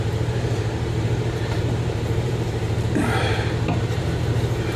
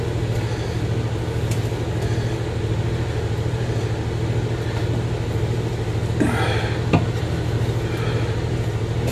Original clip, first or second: second